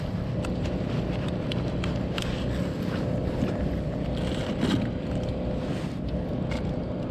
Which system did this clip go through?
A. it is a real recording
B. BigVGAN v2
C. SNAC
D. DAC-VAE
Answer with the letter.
A